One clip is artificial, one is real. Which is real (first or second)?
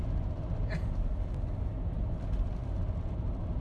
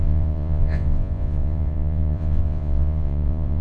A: first